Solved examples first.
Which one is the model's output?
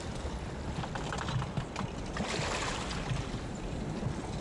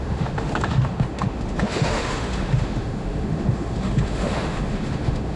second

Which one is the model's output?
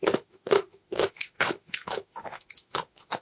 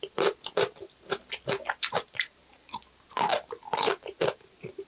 first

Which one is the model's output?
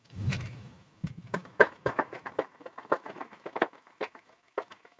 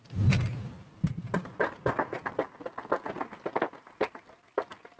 first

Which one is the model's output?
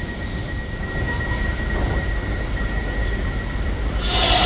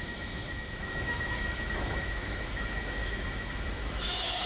second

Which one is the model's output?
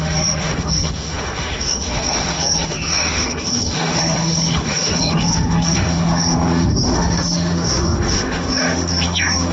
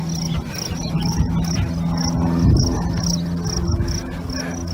first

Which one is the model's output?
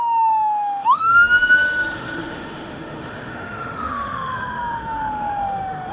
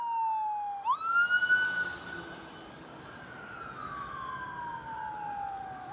first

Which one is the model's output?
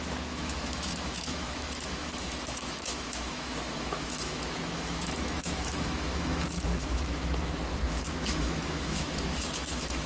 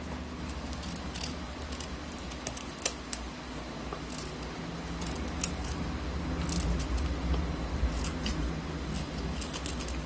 first